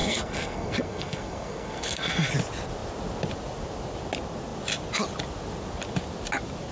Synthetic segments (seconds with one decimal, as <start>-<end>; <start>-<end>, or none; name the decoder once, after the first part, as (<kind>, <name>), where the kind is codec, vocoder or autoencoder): 0.0-2.3 (codec, SNAC)